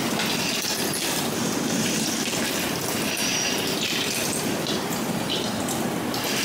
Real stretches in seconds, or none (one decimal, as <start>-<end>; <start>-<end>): 0.0-3.3; 4.8-6.4